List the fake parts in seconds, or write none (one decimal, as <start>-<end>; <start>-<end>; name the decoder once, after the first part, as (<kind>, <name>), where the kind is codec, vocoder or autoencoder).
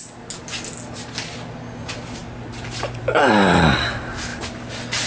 none